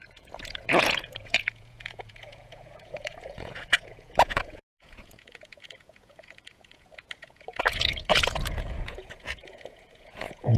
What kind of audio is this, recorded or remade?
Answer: remade